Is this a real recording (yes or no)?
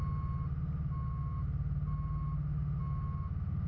yes